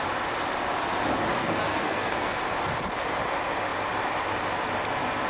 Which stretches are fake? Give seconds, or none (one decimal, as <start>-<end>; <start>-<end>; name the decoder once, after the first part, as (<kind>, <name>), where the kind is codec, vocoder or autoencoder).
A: 1.4-2.4 (codec, SNAC)